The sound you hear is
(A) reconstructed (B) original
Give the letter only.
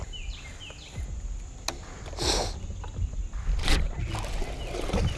B